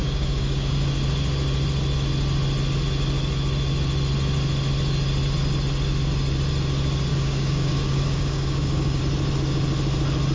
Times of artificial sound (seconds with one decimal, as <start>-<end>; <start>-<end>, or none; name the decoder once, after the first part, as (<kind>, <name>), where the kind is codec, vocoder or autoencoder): 0.0-0.9 (codec, DAC); 7.1-9.0